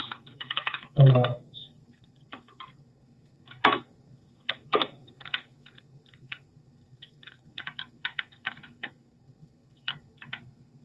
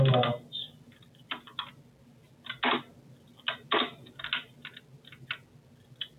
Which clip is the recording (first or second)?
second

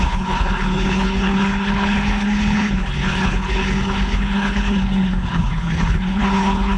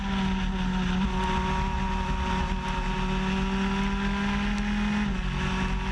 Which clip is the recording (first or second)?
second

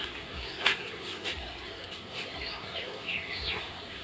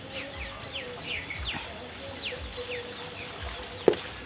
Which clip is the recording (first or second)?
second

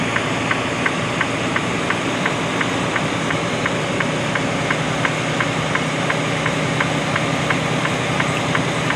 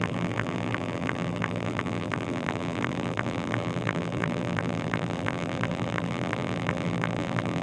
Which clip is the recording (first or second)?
first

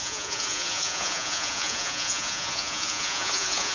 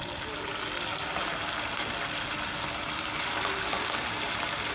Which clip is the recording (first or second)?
second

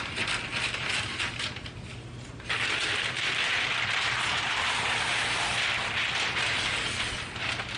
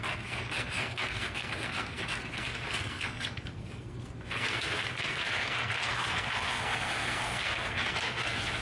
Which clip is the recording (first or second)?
first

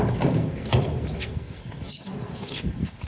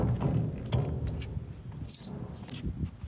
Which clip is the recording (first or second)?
second